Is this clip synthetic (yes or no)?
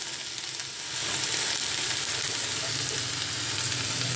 no